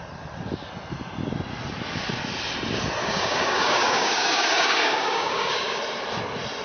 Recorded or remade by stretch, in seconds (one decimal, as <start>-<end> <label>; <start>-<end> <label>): 0.0-3.0 recorded; 3.0-5.8 remade; 5.8-6.6 recorded